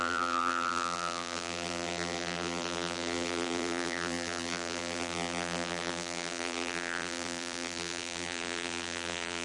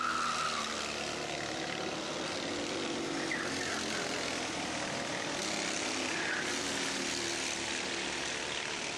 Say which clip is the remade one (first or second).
first